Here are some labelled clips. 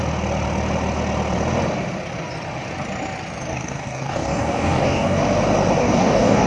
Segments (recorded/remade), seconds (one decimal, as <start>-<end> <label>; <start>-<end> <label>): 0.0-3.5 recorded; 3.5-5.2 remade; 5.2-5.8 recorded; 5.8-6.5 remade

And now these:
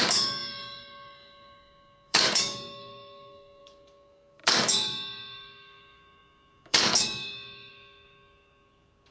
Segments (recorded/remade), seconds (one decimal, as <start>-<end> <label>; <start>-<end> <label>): 0.0-9.1 remade

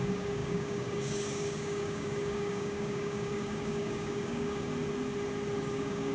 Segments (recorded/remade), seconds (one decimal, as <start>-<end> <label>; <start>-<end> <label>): 0.0-4.7 remade; 4.7-5.6 recorded; 5.6-6.1 remade

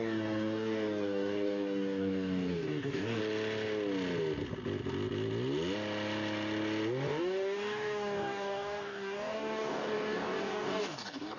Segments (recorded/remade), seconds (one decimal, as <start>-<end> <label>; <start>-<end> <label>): 0.0-3.2 remade; 3.2-7.1 recorded; 7.1-11.4 remade